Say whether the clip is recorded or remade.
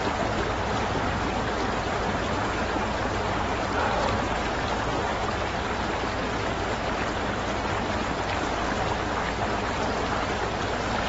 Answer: recorded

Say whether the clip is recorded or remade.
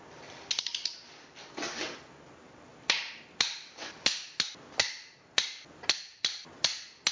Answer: recorded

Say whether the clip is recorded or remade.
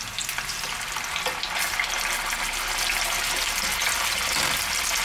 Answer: recorded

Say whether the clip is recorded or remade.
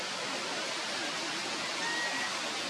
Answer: recorded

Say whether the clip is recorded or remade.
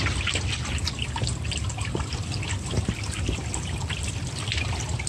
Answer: recorded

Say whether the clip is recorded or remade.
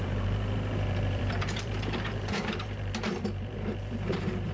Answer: remade